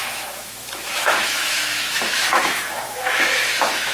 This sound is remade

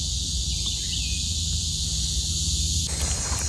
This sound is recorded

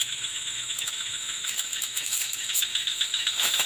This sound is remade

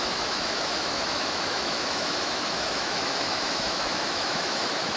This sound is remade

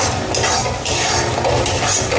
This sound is recorded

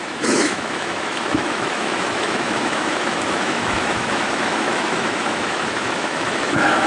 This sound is remade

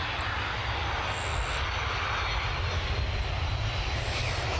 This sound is recorded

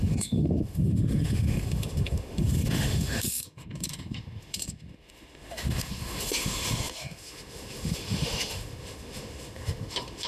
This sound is remade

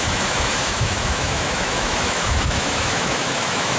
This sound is remade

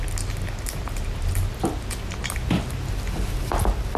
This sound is recorded